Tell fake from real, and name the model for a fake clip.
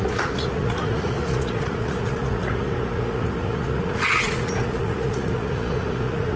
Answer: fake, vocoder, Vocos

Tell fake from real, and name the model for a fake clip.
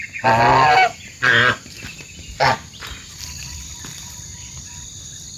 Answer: real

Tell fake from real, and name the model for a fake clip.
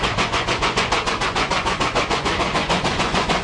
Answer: fake, vocoder, Vocos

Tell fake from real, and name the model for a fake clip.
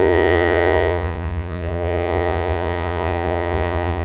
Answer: fake, vocoder, Vocos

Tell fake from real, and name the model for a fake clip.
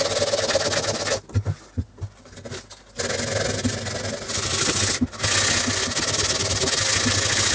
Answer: real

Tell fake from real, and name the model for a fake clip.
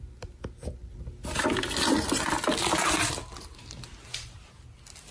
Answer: real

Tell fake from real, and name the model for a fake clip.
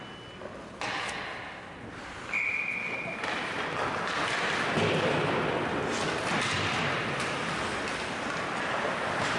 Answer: real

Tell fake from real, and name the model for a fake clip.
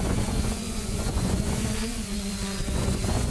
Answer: fake, vocoder, Vocos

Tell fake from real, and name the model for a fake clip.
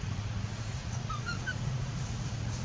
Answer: fake, vocoder, Vocos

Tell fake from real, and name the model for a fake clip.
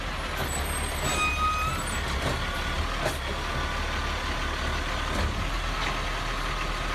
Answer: real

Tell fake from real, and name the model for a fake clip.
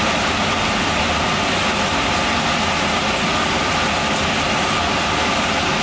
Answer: real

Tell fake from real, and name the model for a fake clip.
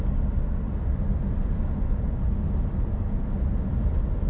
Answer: real